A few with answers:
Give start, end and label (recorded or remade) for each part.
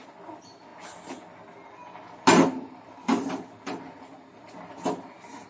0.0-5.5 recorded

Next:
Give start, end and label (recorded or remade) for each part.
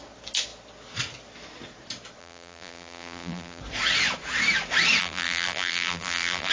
0.0-2.2 recorded; 2.2-3.6 remade; 3.6-5.0 recorded; 5.0-6.5 remade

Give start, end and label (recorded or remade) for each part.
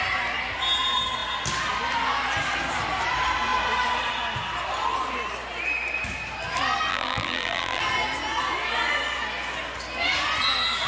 0.0-6.9 recorded; 6.9-7.8 remade; 7.8-10.9 recorded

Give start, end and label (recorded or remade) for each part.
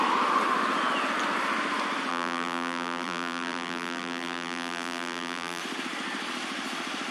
0.0-2.1 recorded; 2.1-5.6 remade; 5.6-7.1 recorded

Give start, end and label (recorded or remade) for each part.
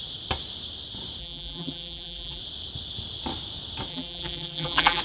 0.0-1.2 recorded; 1.2-2.4 remade; 2.4-3.9 recorded; 3.9-5.0 remade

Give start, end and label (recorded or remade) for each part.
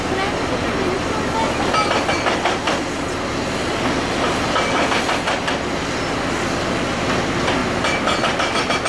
0.0-8.9 recorded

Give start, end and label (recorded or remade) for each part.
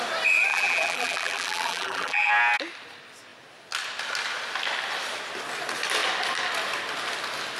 0.0-0.5 recorded; 0.5-2.3 remade; 2.3-7.6 recorded